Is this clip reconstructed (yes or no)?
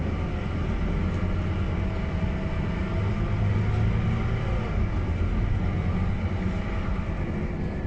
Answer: no